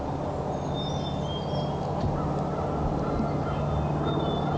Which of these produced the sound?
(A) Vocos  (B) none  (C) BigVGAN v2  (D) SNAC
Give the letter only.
B